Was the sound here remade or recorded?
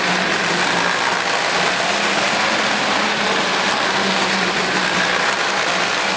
recorded